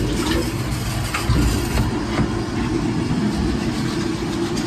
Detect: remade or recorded recorded